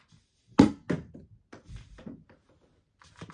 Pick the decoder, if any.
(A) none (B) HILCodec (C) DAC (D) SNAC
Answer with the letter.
A